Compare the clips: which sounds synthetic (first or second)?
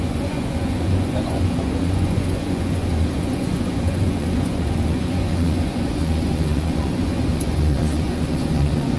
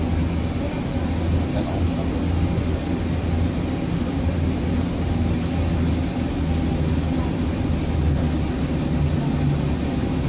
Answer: first